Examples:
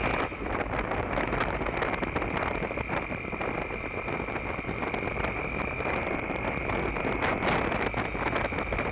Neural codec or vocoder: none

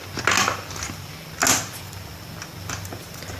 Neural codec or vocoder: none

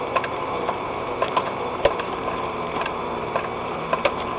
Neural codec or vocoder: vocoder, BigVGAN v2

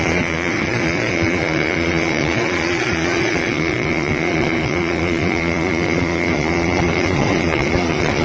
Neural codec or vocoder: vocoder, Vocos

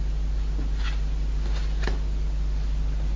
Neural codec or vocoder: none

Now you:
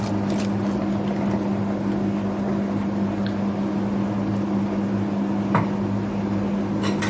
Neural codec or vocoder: none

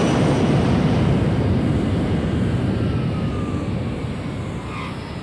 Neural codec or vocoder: none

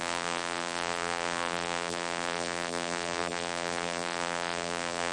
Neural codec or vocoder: vocoder, BigVGAN v2